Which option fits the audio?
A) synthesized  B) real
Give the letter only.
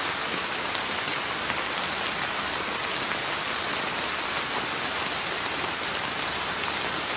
B